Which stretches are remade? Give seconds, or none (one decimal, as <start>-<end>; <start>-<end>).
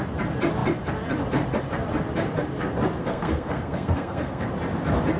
3.0-4.5